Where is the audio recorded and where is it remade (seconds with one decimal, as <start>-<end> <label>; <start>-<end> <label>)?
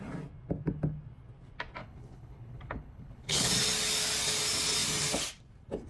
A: 0.0-1.8 recorded; 1.8-3.5 remade; 3.5-5.9 recorded